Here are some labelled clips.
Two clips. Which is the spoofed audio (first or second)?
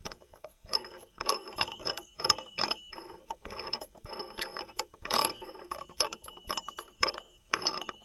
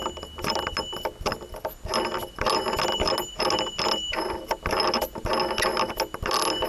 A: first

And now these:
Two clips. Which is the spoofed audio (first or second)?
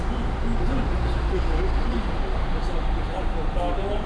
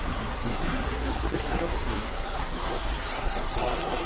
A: second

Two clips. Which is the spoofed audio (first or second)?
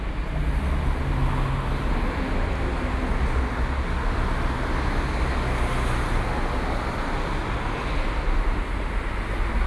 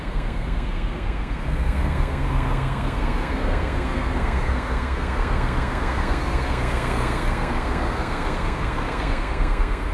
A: second